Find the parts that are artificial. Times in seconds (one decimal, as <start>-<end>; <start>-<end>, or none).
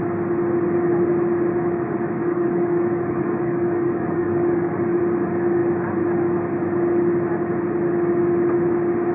2.2-5.0